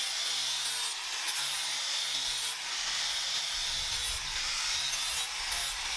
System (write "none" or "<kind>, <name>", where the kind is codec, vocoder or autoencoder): none